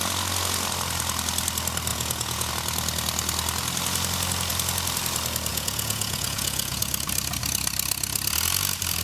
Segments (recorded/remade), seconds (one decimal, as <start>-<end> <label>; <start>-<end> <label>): 0.0-1.9 recorded; 1.9-2.5 remade; 2.5-5.5 recorded; 5.5-6.8 remade; 6.8-9.0 recorded

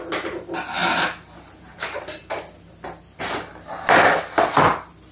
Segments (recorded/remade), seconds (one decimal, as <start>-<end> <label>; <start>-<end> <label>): 0.0-5.1 recorded

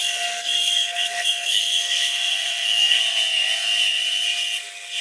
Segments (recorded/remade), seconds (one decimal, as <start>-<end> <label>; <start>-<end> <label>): 0.0-3.0 remade; 3.0-5.0 recorded

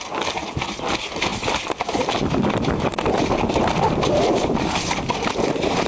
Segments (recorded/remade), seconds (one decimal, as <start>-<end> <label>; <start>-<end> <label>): 0.0-5.9 recorded

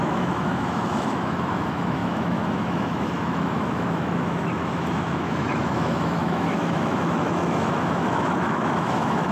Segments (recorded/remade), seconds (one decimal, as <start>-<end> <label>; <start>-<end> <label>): 0.0-9.3 remade